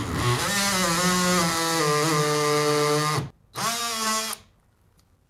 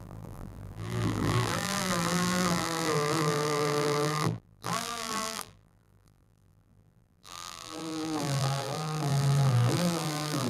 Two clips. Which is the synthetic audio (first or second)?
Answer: second